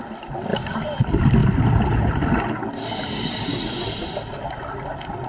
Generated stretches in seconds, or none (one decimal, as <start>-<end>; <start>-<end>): 0.5-1.0